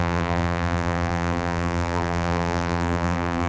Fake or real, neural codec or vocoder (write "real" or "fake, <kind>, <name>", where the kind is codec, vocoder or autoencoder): fake, vocoder, BigVGAN v2